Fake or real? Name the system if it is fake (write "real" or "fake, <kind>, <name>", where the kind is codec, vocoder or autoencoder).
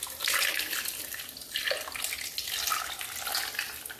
real